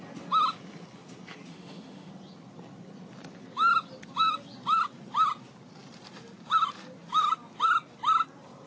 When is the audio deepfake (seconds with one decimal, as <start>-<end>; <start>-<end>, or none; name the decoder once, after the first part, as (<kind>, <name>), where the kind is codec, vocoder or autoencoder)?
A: 1.5-2.1 (autoencoder, DAC-VAE)